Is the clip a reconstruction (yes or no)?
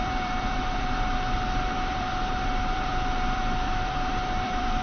yes